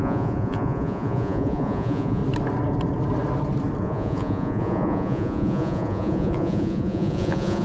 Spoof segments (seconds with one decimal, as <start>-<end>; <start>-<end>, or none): 0.0-2.2; 3.8-7.6